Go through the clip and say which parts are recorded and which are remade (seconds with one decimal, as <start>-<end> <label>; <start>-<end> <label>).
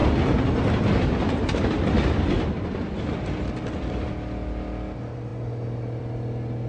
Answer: 0.0-6.7 recorded